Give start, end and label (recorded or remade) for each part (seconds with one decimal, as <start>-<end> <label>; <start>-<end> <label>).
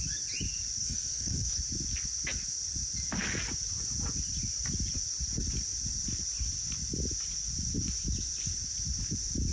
0.0-0.8 recorded; 0.8-1.6 remade; 1.6-9.5 recorded